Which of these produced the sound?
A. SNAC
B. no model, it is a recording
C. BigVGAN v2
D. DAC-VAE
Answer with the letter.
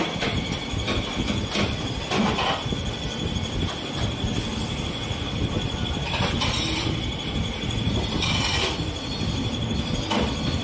B